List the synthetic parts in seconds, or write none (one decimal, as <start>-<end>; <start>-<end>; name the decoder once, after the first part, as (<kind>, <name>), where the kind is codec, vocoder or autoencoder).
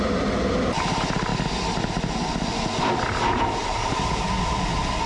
none